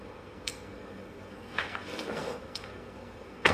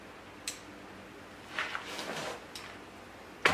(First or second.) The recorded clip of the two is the second